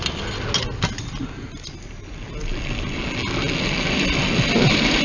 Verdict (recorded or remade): recorded